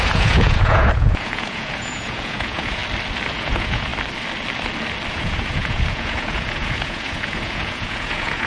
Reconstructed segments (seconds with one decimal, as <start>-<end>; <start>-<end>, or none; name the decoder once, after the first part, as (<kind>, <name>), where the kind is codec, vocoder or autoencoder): 0.0-2.8 (vocoder, Vocos); 3.3-3.9; 5.1-8.5